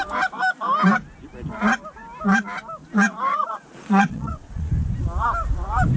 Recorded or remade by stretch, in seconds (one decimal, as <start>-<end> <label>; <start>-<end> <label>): 0.0-3.3 recorded; 3.3-4.7 remade; 4.7-6.0 recorded